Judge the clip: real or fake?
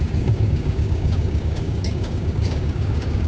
fake